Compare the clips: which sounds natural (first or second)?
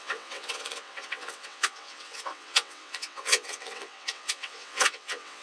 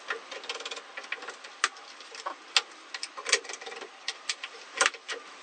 second